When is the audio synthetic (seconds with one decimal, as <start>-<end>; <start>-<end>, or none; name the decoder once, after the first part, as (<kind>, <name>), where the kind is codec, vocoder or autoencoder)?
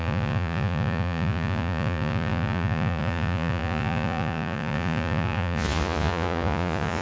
0.0-7.0 (vocoder, Vocos)